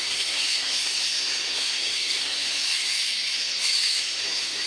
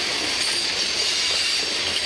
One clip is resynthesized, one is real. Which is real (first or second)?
second